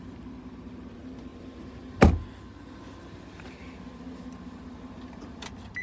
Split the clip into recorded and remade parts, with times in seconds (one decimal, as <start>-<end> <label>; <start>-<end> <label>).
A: 0.0-1.3 remade; 1.3-4.8 recorded; 4.8-5.8 remade

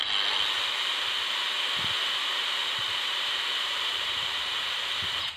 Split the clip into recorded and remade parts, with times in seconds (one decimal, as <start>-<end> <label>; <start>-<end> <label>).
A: 0.0-2.2 recorded; 2.2-4.9 remade; 4.9-5.4 recorded

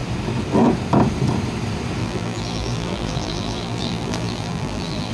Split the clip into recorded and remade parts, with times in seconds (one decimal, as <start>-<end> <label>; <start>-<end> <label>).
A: 0.0-2.0 recorded; 2.0-5.1 remade